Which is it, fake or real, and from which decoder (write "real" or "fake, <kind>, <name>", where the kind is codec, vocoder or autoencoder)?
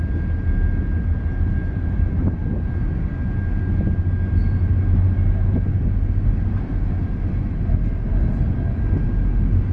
real